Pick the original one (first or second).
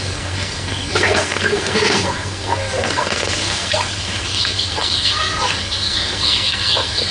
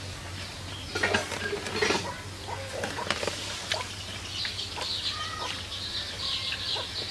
second